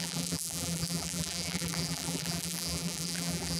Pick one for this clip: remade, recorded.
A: remade